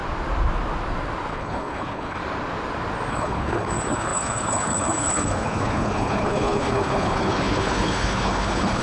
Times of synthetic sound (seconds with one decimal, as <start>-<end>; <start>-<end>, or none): 1.3-2.2; 3.1-8.8